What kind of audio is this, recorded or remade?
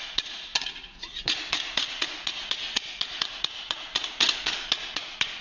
remade